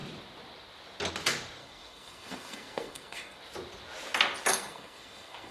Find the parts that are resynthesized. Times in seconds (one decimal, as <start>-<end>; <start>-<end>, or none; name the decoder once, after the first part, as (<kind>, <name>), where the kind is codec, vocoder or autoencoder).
1.6-3.4 (codec, SNAC); 4.5-5.5